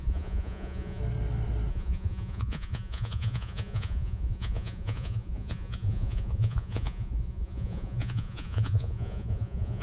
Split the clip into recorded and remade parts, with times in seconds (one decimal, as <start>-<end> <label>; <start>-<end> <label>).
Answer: 0.0-1.0 remade; 1.0-1.7 recorded; 1.7-9.8 remade